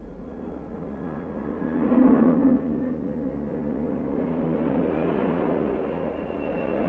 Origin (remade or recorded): remade